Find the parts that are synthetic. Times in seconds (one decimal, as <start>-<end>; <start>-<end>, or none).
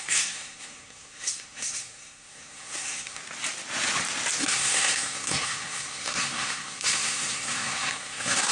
0.0-3.2; 4.4-8.5